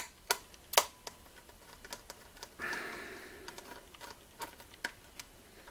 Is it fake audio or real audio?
real